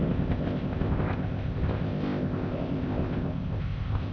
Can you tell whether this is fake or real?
fake